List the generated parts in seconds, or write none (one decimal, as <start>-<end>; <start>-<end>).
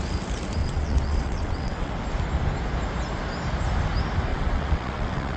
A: 0.6-1.9; 4.3-5.4